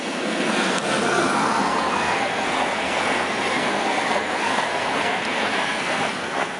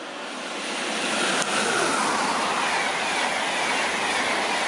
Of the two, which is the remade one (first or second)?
first